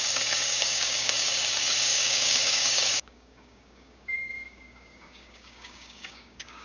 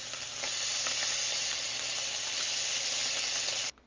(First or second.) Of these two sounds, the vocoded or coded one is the first